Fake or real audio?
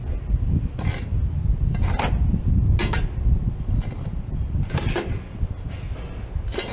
real